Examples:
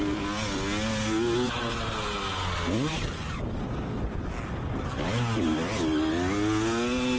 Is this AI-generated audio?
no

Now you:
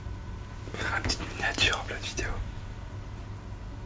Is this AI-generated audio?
no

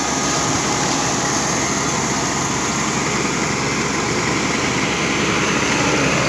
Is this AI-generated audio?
no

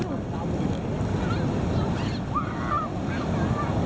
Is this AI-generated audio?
no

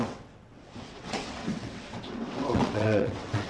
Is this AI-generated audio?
yes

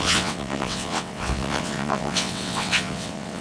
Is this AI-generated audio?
yes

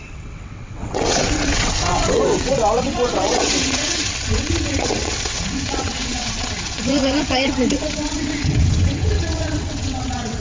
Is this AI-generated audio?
yes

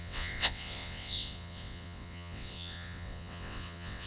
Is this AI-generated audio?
yes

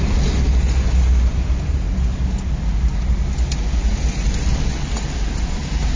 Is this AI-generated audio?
no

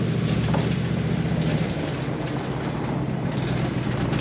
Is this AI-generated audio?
no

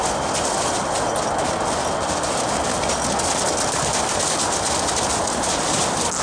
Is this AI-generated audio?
no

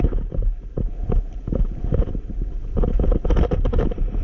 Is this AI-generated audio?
no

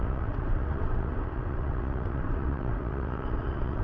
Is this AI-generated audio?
yes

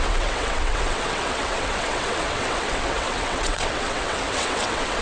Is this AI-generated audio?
yes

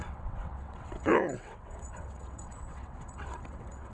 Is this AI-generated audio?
yes